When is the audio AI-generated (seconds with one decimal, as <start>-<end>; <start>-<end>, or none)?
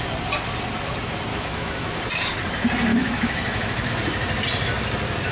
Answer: 1.3-2.0; 2.9-3.9